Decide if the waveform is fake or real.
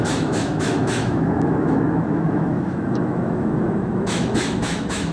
fake